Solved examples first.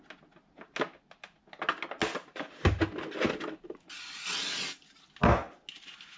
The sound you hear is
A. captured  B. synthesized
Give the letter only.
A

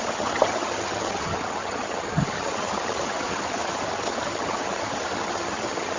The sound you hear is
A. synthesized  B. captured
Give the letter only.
A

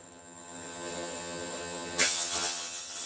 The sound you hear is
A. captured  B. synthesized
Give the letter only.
B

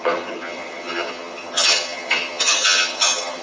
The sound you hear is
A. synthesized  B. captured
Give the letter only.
A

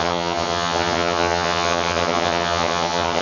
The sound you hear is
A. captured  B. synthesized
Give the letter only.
B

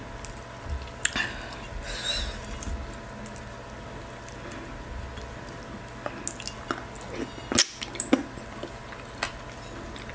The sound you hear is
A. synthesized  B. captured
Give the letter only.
B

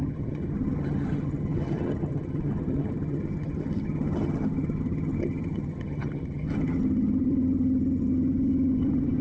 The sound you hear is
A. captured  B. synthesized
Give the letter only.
B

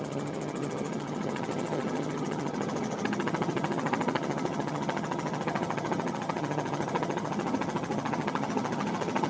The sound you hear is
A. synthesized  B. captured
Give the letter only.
A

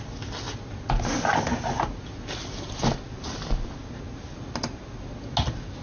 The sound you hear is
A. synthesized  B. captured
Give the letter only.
B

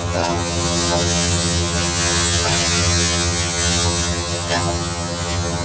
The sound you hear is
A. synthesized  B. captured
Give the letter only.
A